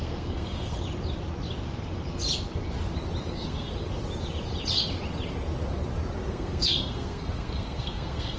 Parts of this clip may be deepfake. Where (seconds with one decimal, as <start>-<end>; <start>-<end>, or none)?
0.0-0.8; 3.3-3.7; 6.3-8.4